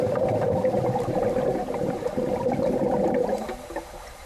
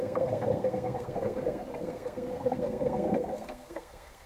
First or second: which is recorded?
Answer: first